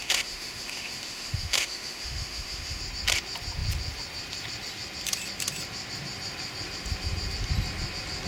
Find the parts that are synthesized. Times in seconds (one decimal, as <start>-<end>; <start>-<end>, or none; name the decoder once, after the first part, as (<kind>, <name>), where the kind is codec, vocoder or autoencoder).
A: 0.0-2.8 (autoencoder, DAC-VAE)